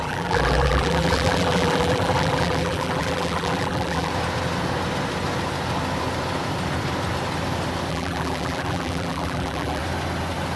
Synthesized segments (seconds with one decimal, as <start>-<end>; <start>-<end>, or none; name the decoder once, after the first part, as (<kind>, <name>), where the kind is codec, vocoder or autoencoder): 0.0-4.1 (vocoder, BigVGAN v2); 7.9-9.8

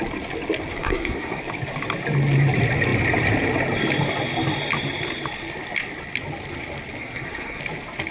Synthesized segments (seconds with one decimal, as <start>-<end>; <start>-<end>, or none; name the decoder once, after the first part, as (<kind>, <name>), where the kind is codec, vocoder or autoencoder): 0.7-1.4 (codec, SNAC); 7.0-7.6

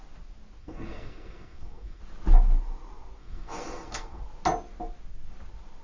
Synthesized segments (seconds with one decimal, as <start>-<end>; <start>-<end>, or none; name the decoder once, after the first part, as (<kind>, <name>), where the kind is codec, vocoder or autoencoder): 0.6-2.0 (codec, SNAC); 3.2-4.2